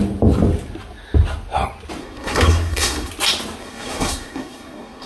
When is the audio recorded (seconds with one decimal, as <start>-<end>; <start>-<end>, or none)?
0.0-2.0; 3.1-3.6

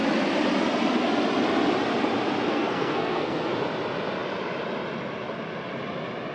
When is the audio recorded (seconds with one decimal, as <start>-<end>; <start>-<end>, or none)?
0.0-2.5; 3.5-6.3

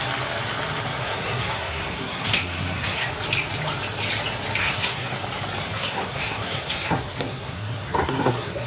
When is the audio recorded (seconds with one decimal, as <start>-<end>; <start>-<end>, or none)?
0.0-1.0; 3.1-4.6; 5.1-5.6